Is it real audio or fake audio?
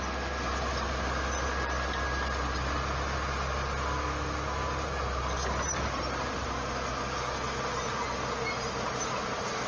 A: real